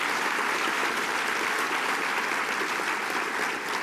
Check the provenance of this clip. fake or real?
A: real